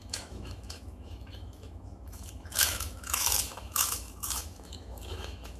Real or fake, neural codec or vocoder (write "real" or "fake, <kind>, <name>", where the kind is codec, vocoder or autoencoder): fake, autoencoder, DAC-VAE